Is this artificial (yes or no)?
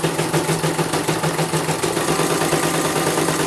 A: no